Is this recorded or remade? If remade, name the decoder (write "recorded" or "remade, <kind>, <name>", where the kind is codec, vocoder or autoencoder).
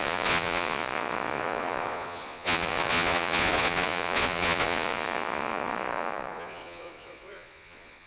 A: remade, vocoder, Vocos